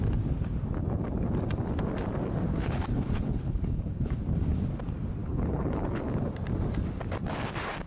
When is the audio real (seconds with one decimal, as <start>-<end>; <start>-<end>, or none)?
0.0-2.5; 4.2-5.2; 6.0-7.9